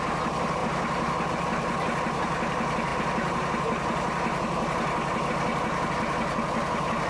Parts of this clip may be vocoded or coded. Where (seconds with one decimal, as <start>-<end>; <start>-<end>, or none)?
none

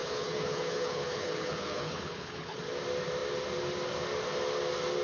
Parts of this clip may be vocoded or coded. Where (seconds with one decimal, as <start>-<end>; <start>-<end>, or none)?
0.0-2.6

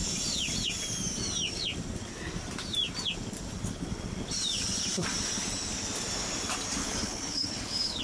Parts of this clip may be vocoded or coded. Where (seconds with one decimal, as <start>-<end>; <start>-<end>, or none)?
6.8-8.0

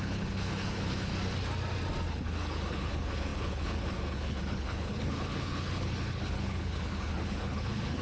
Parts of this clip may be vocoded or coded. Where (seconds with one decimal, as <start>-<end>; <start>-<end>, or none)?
0.0-1.1; 2.1-8.0